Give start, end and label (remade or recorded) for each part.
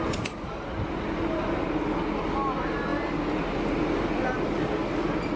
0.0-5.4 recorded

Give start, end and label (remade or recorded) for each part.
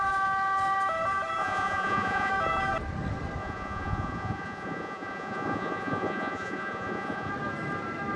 0.0-1.4 recorded; 1.4-2.3 remade; 2.3-3.4 recorded; 3.4-7.3 remade; 7.3-8.2 recorded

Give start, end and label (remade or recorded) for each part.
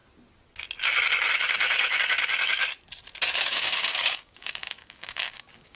0.0-3.4 recorded; 3.4-5.7 remade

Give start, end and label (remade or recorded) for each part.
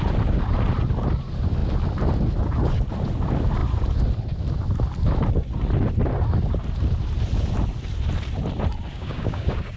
0.0-8.9 recorded; 8.9-9.8 remade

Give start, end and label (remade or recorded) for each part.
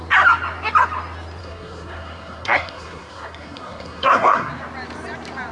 0.0-1.4 recorded; 1.4-4.5 remade; 4.5-5.5 recorded